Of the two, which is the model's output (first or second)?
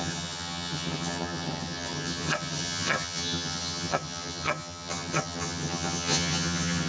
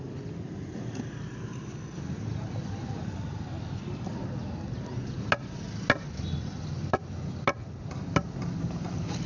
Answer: first